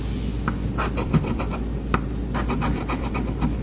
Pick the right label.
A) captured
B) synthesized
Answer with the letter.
B